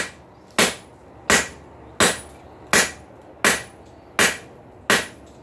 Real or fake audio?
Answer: real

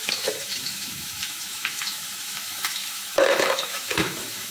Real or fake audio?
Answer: fake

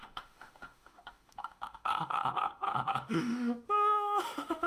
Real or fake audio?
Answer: fake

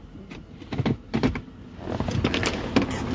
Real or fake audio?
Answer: real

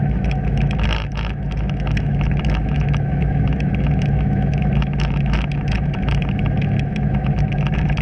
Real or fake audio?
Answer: fake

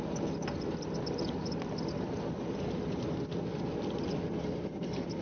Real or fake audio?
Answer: real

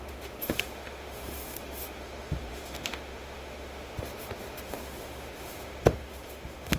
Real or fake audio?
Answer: fake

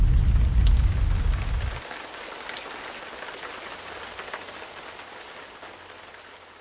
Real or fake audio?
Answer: real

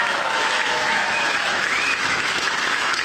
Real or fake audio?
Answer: fake